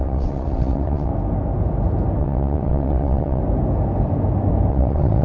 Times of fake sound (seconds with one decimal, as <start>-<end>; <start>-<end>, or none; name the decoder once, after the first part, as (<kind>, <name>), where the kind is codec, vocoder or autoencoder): 0.0-1.1 (vocoder, WaveNeXt); 2.2-3.4; 4.7-5.2